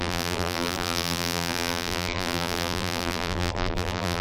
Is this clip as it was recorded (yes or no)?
no